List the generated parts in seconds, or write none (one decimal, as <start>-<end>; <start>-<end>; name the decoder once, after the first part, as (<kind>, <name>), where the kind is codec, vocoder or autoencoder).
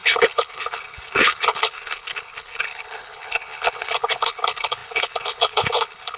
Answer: 0.0-6.2 (codec, HILCodec)